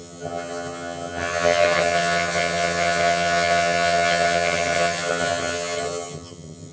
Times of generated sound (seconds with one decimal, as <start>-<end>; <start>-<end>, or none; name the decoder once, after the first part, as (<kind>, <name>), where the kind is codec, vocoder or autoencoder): 0.0-6.7 (vocoder, HiFi-GAN)

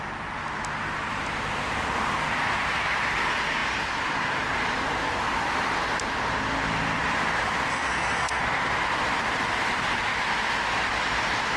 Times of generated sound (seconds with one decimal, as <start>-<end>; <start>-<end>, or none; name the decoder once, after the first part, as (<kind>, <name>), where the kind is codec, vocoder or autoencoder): 7.7-8.4 (codec, SNAC)

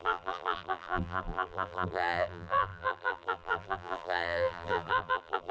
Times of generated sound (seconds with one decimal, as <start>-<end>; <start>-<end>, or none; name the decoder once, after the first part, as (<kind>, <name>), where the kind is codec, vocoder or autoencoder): 0.0-5.5 (vocoder, BigVGAN v2)

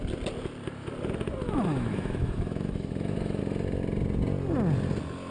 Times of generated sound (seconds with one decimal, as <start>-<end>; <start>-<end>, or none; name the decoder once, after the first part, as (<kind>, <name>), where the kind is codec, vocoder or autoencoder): 1.4-3.4 (autoencoder, DAC-VAE)